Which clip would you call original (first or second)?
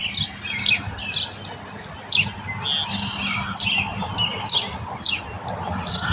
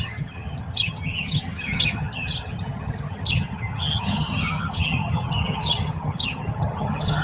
first